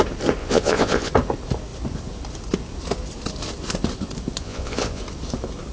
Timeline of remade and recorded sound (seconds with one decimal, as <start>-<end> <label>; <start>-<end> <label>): 0.0-0.4 recorded; 0.4-1.1 remade; 1.1-4.4 recorded; 4.4-5.0 remade; 5.0-5.7 recorded